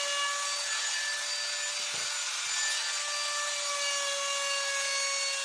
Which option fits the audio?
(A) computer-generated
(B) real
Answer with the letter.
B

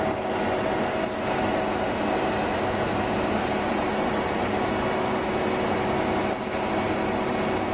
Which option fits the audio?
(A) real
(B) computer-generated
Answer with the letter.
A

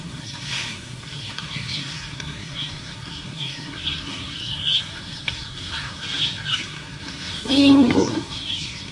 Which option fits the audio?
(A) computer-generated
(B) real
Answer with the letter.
A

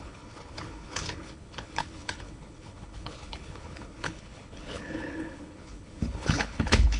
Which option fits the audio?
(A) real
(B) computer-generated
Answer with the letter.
B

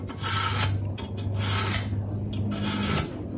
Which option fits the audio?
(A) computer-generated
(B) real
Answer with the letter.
B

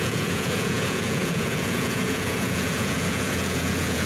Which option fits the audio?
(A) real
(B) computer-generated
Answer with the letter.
B